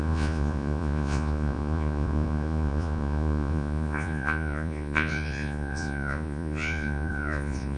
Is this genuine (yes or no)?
no